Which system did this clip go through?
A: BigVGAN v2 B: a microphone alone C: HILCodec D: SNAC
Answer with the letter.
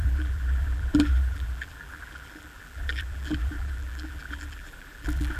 A